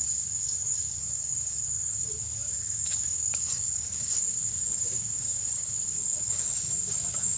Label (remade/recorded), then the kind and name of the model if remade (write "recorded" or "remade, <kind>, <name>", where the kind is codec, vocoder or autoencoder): remade, codec, DAC